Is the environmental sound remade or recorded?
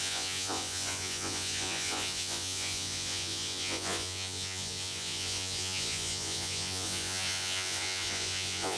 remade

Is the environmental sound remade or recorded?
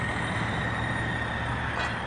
recorded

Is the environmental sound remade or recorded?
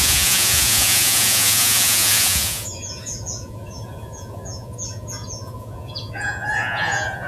remade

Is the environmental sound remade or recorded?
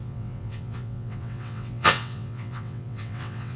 remade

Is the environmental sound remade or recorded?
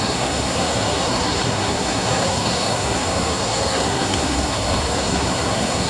remade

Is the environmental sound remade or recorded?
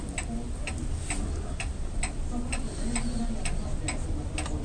recorded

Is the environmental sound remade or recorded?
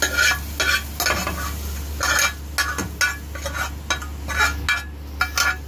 recorded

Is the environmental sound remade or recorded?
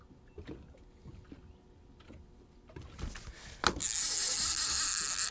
recorded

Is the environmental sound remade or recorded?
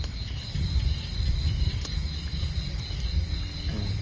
recorded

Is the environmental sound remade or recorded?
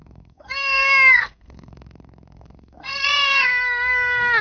remade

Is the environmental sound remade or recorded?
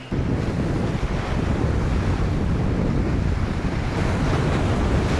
recorded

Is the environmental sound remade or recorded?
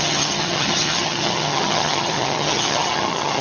remade